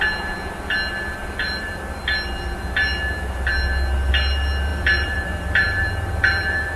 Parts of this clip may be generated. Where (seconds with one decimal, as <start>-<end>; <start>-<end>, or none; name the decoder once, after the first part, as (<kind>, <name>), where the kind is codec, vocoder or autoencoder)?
1.2-2.0 (vocoder, BigVGAN v2); 4.7-6.8